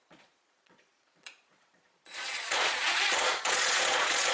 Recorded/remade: remade